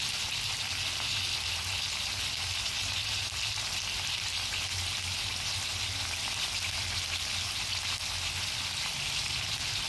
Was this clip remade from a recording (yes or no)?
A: no